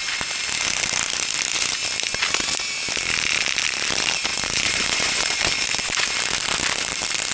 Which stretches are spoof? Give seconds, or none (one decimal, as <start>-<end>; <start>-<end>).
4.3-5.5